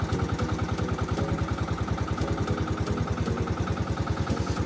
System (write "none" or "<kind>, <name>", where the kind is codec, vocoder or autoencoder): none